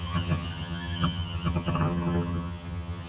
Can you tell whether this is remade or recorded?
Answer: remade